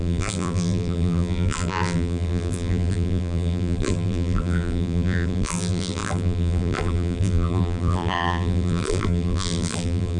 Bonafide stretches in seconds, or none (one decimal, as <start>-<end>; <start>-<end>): none